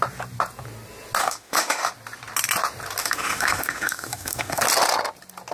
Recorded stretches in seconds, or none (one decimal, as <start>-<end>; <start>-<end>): 0.0-1.2; 1.9-3.0; 4.6-5.5